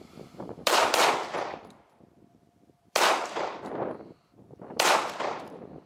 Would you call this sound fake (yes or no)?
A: yes